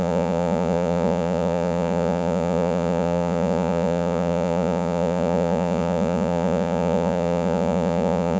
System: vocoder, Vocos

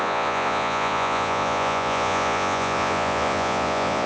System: vocoder, Vocos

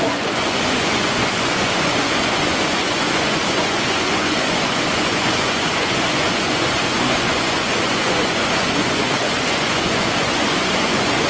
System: vocoder, Vocos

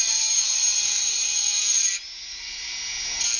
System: none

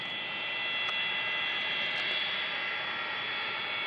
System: none